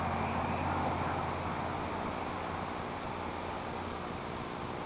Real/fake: real